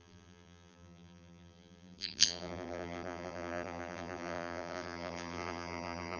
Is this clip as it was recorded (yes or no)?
no